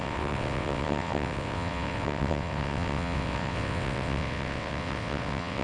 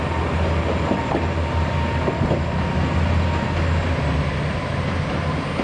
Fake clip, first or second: first